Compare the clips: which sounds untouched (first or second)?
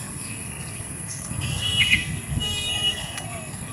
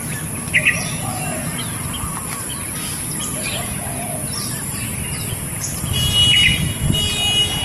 second